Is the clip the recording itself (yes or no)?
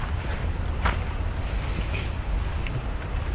yes